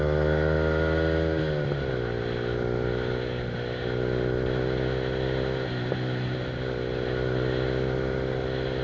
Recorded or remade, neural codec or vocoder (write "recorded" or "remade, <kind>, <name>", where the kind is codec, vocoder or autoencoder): recorded